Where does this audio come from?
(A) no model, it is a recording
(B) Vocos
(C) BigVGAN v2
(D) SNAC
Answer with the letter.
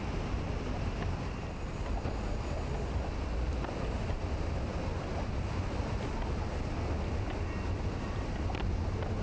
A